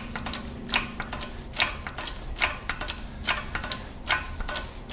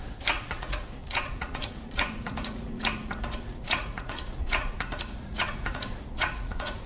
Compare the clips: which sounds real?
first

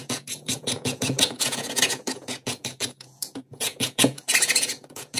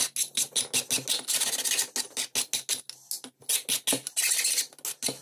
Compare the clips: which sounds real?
second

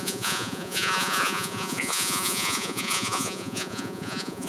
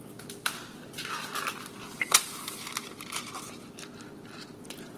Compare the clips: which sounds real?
second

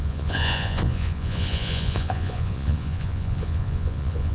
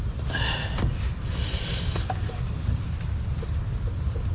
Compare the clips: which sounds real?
second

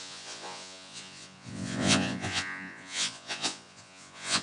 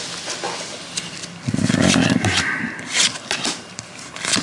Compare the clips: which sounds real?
second